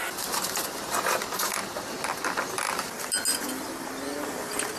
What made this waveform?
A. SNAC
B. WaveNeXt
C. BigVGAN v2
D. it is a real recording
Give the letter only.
D